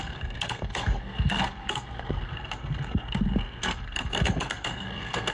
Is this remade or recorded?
remade